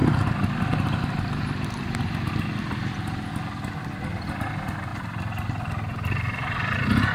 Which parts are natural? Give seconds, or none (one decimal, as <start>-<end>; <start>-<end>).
0.0-3.8